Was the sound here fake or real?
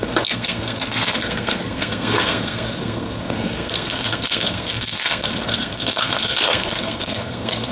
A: fake